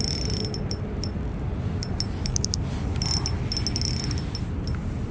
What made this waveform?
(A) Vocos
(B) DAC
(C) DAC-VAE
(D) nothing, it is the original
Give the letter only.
D